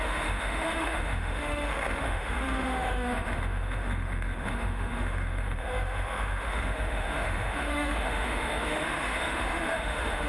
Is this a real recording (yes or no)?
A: no